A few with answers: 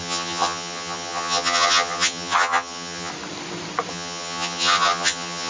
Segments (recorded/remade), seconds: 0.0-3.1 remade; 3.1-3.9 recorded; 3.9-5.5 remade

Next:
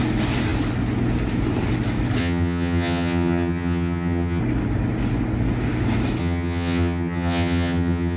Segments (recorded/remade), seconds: 0.0-2.2 recorded; 2.2-4.4 remade; 4.4-6.2 recorded; 6.2-8.2 remade

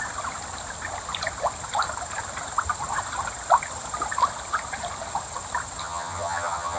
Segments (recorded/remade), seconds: 0.0-5.8 recorded; 5.8-6.8 remade

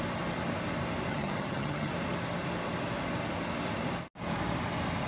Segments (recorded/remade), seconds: 0.0-1.1 recorded; 1.1-1.9 remade; 1.9-5.1 recorded

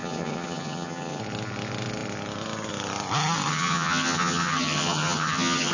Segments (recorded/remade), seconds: 0.0-1.2 remade; 1.2-3.5 recorded; 3.5-5.7 remade

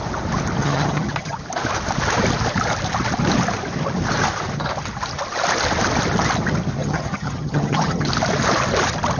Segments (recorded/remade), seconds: 0.0-0.6 recorded; 0.6-1.4 remade; 1.4-6.8 recorded; 6.8-8.1 remade; 8.1-9.2 recorded